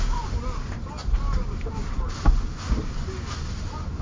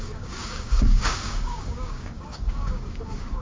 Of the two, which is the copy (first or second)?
second